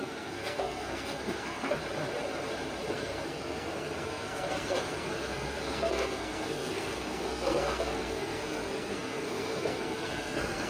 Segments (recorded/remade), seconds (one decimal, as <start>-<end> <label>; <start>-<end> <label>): 0.0-1.8 remade; 1.8-2.9 recorded; 2.9-10.7 remade